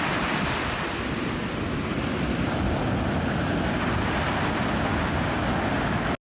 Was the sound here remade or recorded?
recorded